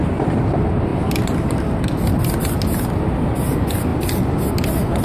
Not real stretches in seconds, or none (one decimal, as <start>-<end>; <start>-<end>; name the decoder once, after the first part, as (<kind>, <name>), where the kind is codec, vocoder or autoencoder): none